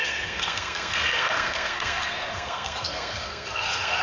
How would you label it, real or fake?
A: fake